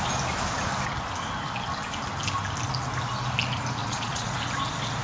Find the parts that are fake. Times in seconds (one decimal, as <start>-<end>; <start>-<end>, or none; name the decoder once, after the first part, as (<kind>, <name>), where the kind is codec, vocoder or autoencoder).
3.8-4.4 (vocoder, Vocos)